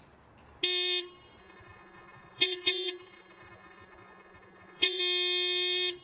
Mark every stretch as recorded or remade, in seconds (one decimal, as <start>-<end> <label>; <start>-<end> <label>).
0.0-1.4 recorded; 1.4-5.0 remade; 5.0-6.0 recorded